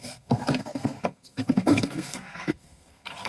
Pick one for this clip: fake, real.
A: fake